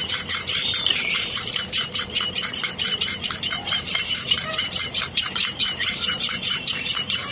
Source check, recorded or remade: remade